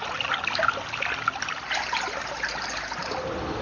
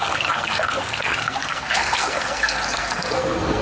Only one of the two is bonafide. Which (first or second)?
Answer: first